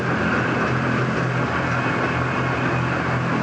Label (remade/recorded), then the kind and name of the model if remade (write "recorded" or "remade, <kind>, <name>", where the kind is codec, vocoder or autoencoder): recorded